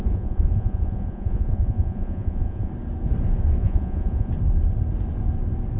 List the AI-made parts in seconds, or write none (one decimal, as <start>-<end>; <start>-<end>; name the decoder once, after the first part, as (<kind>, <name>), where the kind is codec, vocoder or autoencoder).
0.0-2.7 (vocoder, Vocos); 3.6-4.3